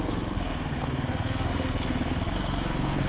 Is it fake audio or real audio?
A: fake